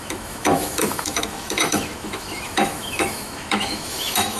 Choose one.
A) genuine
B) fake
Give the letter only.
B